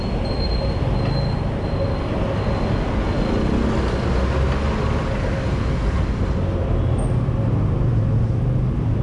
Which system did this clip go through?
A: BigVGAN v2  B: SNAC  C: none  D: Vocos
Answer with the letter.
C